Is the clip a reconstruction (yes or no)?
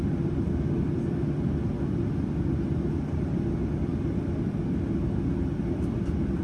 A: no